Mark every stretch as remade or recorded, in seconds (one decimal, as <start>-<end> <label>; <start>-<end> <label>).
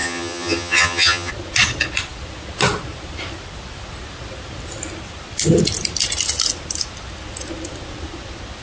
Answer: 0.0-1.3 remade; 1.3-8.6 recorded